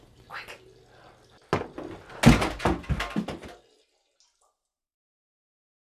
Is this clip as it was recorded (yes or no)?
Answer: yes